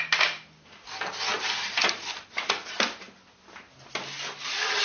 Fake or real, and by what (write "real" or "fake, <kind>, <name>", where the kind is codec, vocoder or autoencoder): real